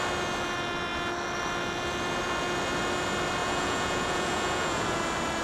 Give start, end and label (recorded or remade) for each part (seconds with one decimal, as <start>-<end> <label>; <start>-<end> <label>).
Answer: 0.0-3.4 recorded; 3.4-5.0 remade; 5.0-5.4 recorded